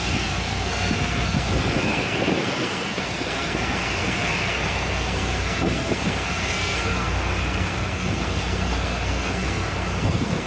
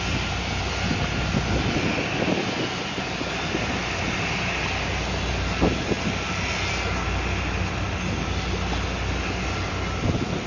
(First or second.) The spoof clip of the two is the first